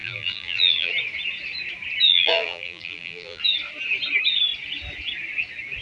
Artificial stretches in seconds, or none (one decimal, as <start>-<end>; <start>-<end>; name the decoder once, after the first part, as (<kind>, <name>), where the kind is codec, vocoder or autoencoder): 0.0-0.9 (vocoder, BigVGAN v2); 2.1-3.4